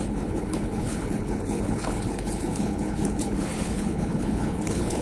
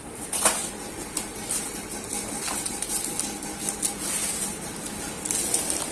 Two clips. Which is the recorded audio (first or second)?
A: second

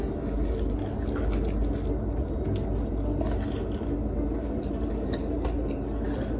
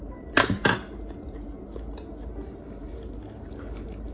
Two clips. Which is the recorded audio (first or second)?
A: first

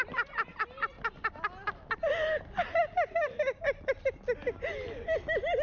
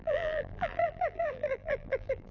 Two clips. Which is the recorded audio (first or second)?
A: first